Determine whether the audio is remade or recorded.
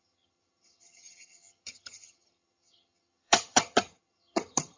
remade